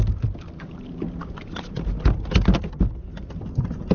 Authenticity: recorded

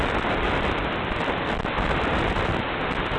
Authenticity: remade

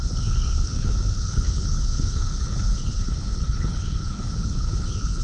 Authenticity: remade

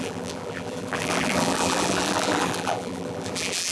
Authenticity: remade